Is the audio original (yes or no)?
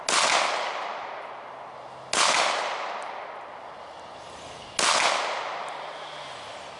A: yes